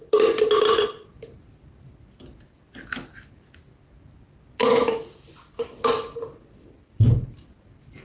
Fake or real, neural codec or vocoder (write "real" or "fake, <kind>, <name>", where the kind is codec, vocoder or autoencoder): real